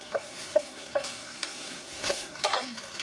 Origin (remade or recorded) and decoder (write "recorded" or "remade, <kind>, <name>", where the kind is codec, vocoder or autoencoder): remade, codec, SNAC